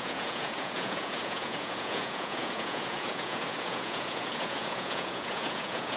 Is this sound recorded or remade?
remade